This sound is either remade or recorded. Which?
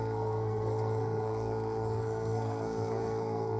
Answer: remade